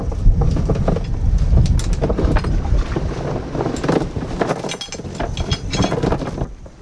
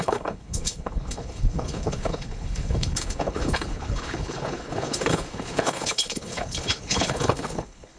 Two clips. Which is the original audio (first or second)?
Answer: first